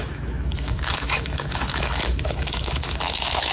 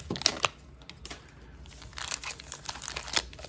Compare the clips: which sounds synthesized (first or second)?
first